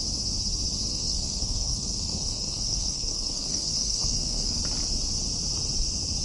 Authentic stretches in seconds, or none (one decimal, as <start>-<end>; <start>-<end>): 0.0-0.9; 4.6-6.2